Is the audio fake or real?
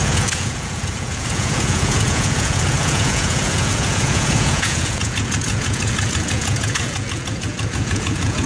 fake